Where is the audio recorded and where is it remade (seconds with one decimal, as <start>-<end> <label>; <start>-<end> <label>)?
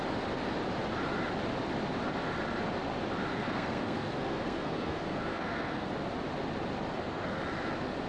0.0-3.3 recorded; 3.3-5.9 remade; 5.9-6.9 recorded; 6.9-7.4 remade; 7.4-8.1 recorded